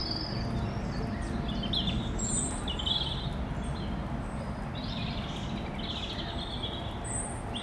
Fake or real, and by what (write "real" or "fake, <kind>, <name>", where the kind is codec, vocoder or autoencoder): real